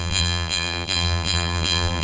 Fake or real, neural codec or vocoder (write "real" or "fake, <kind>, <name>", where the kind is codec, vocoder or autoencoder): fake, vocoder, BigVGAN v2